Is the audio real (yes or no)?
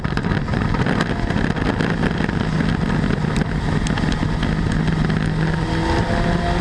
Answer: yes